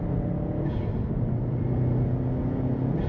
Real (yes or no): yes